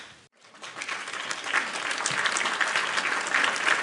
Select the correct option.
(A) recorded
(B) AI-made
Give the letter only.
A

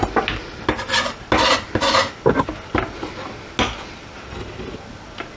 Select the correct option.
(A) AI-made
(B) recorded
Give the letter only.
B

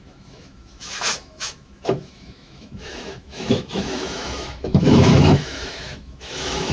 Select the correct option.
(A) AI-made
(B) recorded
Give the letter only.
A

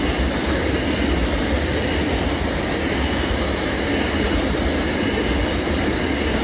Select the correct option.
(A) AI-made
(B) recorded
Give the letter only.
B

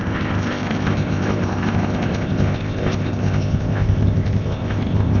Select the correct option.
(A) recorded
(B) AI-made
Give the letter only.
B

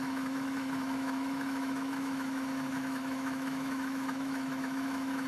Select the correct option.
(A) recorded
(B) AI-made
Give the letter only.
B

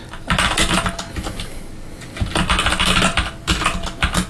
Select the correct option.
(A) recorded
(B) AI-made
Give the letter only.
A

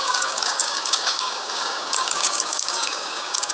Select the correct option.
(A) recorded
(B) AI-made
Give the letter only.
B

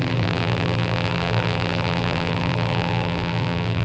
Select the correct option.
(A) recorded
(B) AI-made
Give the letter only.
B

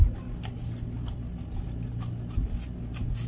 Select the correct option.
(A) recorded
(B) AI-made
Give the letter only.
A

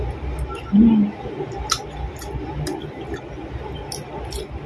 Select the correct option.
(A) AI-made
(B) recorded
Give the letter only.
B